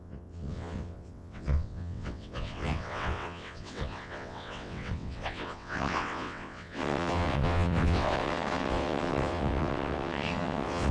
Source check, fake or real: fake